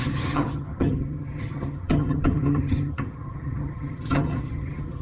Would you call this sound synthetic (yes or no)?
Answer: yes